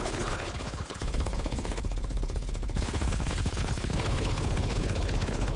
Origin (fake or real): fake